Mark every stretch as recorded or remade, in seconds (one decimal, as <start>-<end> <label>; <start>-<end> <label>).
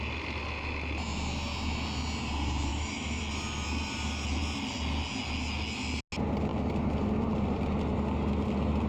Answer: 0.0-2.7 recorded; 2.7-3.2 remade; 3.2-8.9 recorded